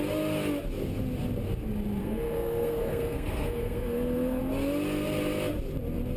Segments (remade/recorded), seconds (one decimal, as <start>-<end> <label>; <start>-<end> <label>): 0.0-2.0 recorded; 2.0-4.4 remade; 4.4-6.2 recorded